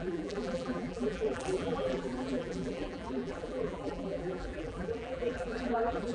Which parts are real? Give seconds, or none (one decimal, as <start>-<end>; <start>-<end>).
none